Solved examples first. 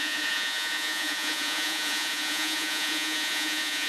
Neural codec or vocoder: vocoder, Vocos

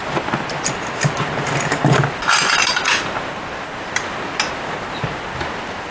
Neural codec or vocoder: none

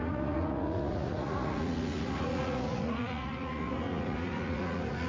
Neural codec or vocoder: vocoder, Vocos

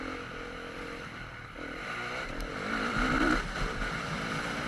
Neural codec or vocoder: vocoder, BigVGAN v2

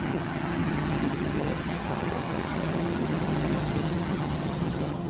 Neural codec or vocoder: vocoder, HiFi-GAN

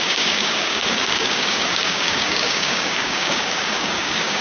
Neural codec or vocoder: codec, DAC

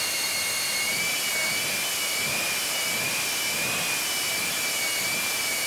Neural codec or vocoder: none